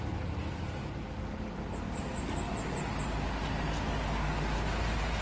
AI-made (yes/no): no